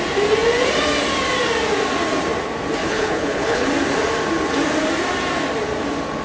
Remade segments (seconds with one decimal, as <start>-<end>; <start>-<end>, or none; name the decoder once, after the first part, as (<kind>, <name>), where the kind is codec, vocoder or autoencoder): 2.8-3.7 (codec, HILCodec)